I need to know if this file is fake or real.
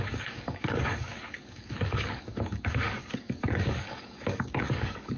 fake